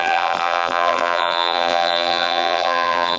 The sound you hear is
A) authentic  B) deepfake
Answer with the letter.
B